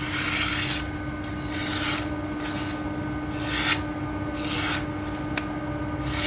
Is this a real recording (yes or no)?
yes